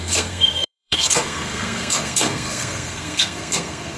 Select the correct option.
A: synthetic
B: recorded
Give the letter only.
A